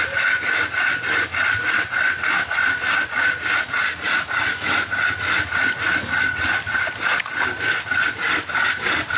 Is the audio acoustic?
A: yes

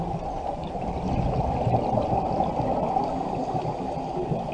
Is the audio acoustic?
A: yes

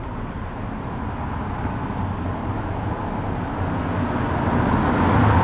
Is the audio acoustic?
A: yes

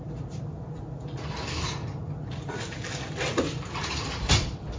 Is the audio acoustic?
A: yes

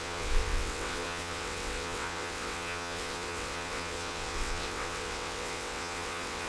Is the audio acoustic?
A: no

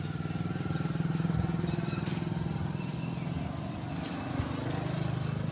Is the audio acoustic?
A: yes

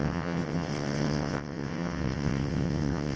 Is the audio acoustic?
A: no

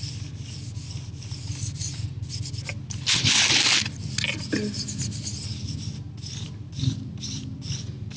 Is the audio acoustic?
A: yes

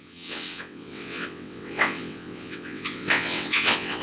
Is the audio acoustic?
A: no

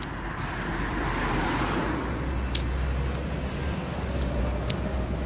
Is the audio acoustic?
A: yes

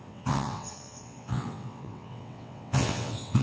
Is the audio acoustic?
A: no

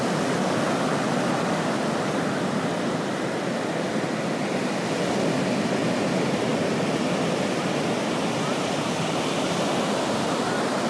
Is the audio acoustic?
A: yes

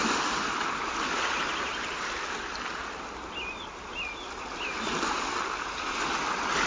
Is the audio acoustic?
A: yes